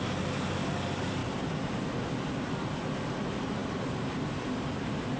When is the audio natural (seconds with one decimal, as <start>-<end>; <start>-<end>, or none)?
0.0-5.2